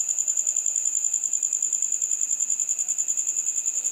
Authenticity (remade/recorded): recorded